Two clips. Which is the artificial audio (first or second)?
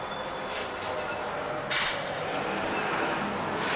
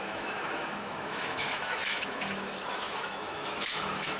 second